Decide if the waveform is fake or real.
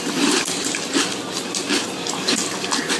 fake